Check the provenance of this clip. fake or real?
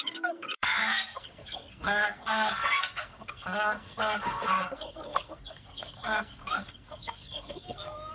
fake